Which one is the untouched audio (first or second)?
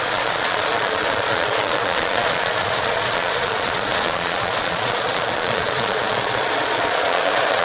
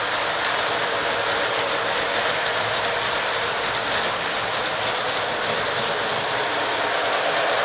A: second